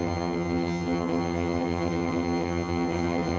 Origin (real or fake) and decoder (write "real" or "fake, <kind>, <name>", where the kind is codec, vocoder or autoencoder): fake, vocoder, HiFi-GAN